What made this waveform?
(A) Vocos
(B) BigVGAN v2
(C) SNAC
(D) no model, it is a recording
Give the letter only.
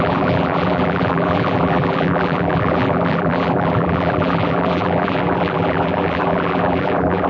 B